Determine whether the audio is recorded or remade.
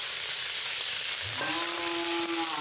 recorded